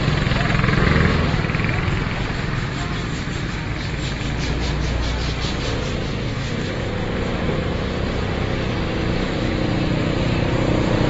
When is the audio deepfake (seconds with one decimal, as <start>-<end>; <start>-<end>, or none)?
6.2-6.7